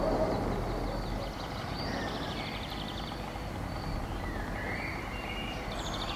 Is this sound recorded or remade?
recorded